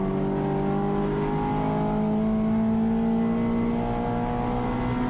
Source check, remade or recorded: recorded